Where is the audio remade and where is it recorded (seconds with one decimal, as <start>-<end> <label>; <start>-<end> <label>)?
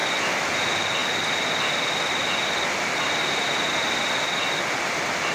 0.0-5.3 recorded